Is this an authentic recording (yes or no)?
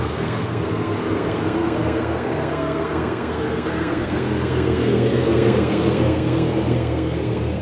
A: no